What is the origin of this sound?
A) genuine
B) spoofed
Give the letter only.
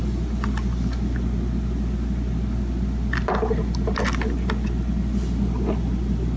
A